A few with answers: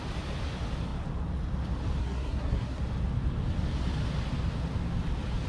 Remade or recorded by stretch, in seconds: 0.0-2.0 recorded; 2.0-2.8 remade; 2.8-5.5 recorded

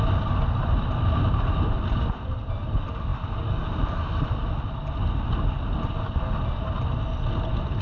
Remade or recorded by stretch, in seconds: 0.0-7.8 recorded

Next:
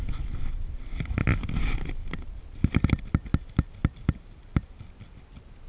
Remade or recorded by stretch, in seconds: 0.0-5.7 recorded

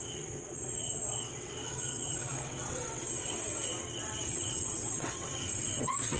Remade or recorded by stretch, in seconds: 0.0-6.2 remade

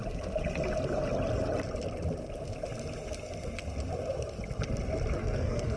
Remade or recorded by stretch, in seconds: 0.0-5.2 recorded; 5.2-5.8 remade

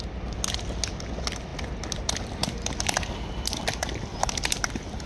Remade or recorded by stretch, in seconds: 0.0-5.1 recorded

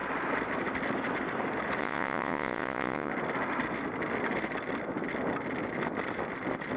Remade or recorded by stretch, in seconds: 0.0-1.8 recorded; 1.8-3.1 remade; 3.1-6.8 recorded

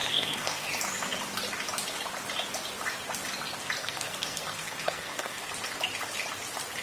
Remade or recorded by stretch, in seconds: 0.0-0.7 remade; 0.7-3.8 recorded; 3.8-5.5 remade; 5.5-6.8 recorded